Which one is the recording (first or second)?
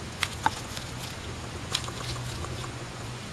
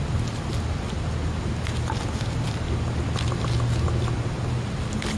second